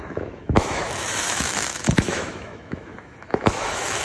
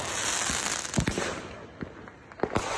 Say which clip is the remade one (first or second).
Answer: first